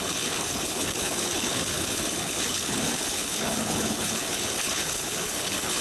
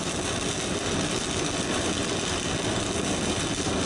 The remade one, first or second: first